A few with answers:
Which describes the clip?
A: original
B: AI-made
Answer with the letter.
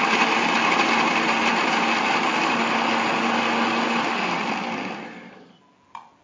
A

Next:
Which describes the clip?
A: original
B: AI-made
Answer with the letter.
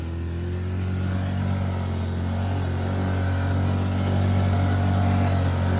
A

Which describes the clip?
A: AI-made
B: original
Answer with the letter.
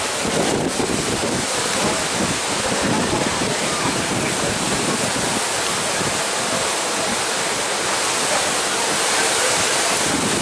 B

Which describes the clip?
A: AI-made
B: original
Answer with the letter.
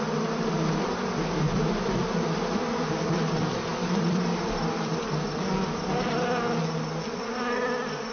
B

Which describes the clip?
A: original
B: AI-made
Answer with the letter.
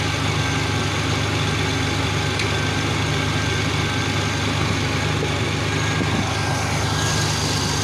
A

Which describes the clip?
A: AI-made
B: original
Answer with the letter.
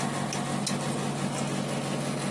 B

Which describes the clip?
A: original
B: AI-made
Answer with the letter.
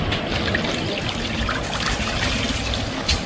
A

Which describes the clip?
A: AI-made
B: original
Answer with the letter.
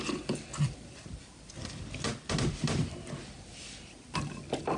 A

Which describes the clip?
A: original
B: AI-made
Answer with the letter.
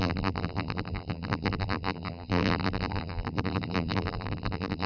B